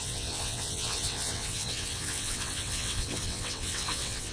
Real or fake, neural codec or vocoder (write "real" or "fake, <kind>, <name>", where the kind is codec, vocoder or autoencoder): fake, vocoder, WaveNeXt